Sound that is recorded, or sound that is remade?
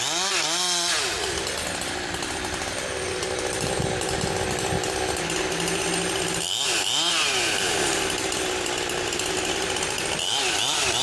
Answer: recorded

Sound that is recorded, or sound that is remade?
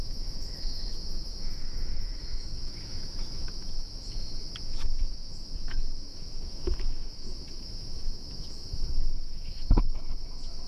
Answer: remade